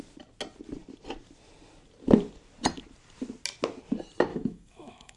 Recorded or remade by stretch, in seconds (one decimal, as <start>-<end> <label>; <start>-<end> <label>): 0.0-4.3 recorded; 4.3-5.2 remade